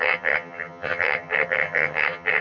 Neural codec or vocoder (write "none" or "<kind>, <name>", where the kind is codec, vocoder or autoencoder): vocoder, HiFi-GAN